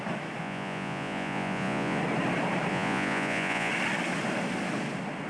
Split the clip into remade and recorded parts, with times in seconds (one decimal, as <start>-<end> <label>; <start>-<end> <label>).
0.0-0.4 recorded; 0.4-2.0 remade; 2.0-2.7 recorded; 2.7-3.7 remade; 3.7-5.3 recorded